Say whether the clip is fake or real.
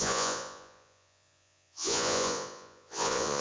fake